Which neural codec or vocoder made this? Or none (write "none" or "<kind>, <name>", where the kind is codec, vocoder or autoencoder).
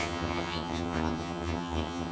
vocoder, HiFi-GAN